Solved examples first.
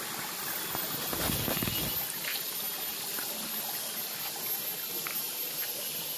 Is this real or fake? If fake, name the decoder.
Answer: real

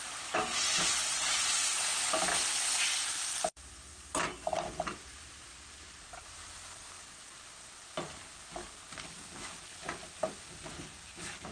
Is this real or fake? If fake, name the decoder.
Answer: real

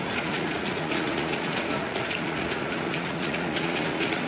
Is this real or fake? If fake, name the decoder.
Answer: fake, vocoder, Vocos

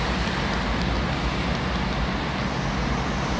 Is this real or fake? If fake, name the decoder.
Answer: real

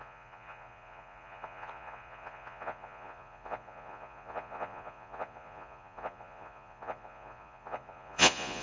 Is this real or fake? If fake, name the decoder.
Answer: fake, vocoder, Vocos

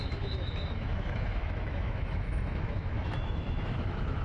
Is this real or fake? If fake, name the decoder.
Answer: fake, autoencoder, DAC-VAE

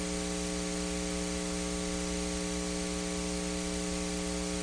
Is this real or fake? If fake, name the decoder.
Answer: real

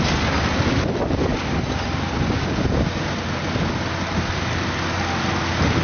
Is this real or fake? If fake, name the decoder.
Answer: real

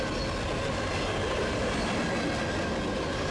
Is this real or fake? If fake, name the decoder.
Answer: real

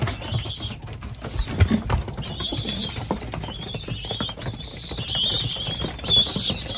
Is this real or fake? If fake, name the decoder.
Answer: real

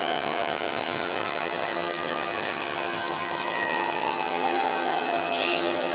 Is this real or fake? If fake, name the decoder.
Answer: fake, vocoder, HiFi-GAN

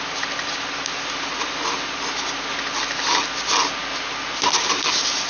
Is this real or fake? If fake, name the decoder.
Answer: real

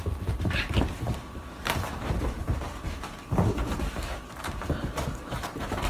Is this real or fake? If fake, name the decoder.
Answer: fake, vocoder, BigVGAN v2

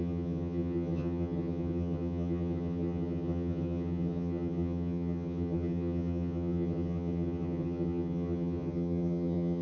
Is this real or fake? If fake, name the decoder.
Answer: fake, vocoder, HiFi-GAN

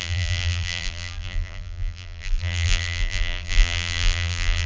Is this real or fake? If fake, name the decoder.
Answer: fake, vocoder, BigVGAN v2